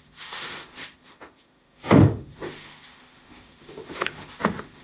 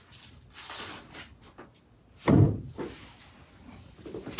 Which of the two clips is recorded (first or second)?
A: second